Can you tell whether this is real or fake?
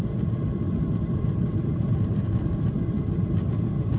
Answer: fake